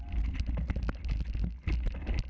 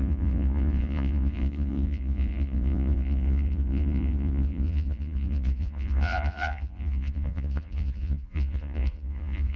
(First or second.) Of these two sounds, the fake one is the second